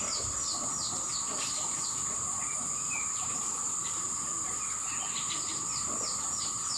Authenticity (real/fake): real